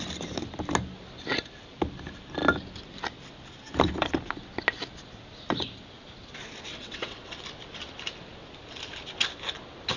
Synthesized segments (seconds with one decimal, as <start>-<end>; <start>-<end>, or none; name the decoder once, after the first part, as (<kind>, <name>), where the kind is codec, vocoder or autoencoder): 6.7-7.4 (vocoder, WaveNeXt)